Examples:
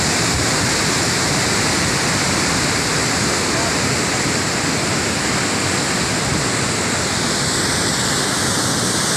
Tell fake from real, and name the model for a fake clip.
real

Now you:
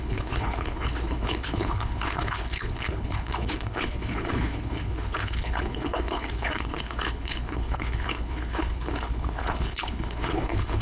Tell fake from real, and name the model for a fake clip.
fake, codec, HILCodec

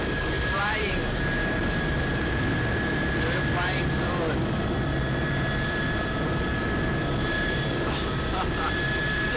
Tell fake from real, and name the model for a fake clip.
fake, vocoder, BigVGAN v2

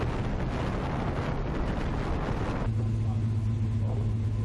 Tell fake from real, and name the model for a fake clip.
real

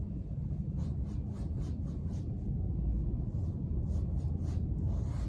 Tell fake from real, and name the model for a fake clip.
real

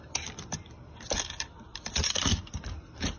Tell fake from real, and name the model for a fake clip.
real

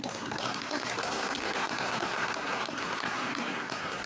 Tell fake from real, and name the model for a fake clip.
fake, codec, SNAC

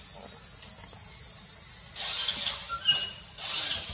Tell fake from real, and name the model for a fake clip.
real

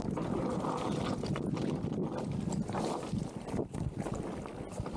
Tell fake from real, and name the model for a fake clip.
real